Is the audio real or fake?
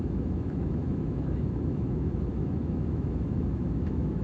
fake